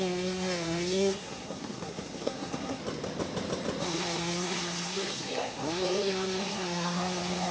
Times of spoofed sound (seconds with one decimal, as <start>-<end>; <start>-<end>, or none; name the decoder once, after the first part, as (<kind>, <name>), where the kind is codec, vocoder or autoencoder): 0.0-2.8 (codec, SNAC); 3.8-7.5

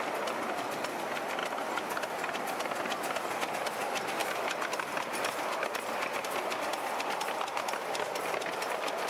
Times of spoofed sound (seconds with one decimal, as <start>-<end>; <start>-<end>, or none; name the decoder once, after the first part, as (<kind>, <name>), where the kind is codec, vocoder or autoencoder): none

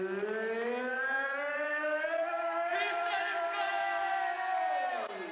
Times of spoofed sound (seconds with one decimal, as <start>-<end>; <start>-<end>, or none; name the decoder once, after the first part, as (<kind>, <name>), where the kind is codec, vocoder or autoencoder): 0.9-3.7 (vocoder, BigVGAN v2)